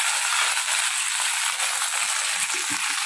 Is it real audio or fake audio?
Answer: real